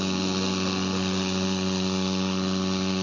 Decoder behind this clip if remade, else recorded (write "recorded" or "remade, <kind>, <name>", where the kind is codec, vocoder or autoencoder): recorded